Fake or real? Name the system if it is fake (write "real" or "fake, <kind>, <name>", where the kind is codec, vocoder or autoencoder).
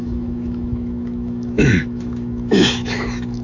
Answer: fake, autoencoder, DAC-VAE